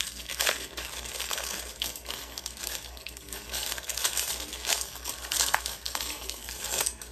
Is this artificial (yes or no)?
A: yes